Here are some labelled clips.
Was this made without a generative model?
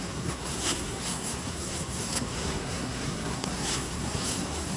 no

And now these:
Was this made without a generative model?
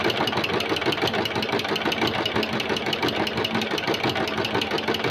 yes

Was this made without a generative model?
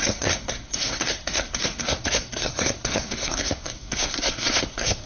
no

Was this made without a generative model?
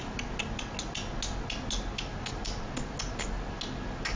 yes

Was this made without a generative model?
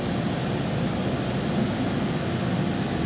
yes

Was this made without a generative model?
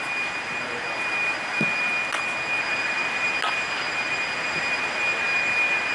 yes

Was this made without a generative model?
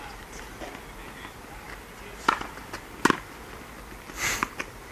yes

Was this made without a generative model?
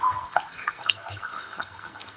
no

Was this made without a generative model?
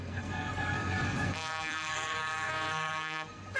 no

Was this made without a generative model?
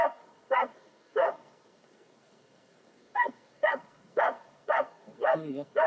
no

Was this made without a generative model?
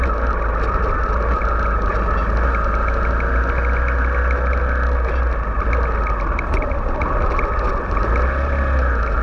yes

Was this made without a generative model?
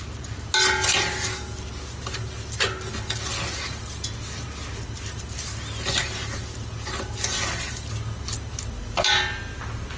yes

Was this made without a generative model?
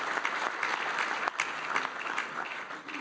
yes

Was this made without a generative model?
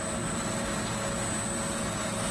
yes